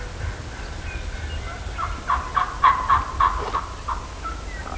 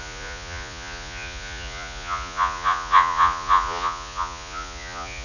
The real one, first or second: first